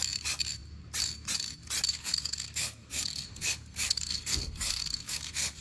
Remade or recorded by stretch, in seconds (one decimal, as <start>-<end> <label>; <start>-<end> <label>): 0.0-1.9 recorded; 1.9-5.6 remade